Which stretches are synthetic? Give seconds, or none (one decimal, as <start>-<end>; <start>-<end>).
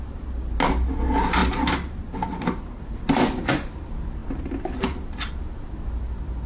none